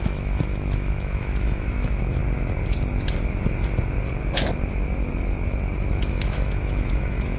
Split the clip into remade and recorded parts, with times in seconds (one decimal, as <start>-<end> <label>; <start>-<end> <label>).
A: 0.0-2.2 remade; 2.2-5.9 recorded; 5.9-7.4 remade